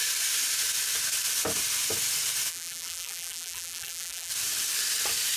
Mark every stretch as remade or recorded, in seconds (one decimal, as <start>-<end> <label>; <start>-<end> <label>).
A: 0.0-2.5 recorded; 2.5-4.3 remade; 4.3-5.4 recorded